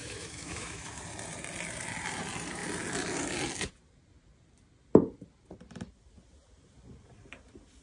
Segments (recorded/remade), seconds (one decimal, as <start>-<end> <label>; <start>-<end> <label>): 0.0-1.0 remade; 1.0-7.8 recorded